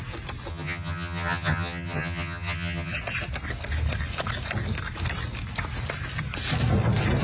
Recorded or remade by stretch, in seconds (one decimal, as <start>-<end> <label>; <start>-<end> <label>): 0.0-0.5 recorded; 0.5-2.9 remade; 2.9-7.2 recorded